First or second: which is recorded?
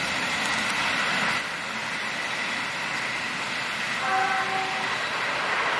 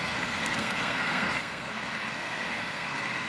first